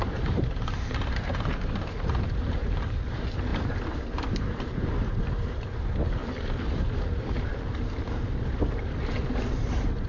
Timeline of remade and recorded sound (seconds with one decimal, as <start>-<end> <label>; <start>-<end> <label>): 0.0-6.2 remade; 6.2-6.7 recorded; 6.7-7.5 remade; 7.5-8.5 recorded; 8.5-10.1 remade

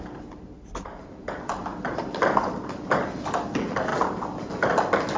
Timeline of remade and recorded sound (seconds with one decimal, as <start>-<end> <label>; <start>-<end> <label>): 0.0-1.6 recorded; 1.6-3.0 remade; 3.0-3.9 recorded; 3.9-4.5 remade; 4.5-5.2 recorded